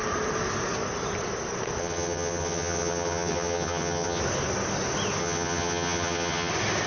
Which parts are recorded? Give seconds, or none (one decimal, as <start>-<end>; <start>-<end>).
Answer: 0.0-1.8; 4.2-5.2; 6.5-6.9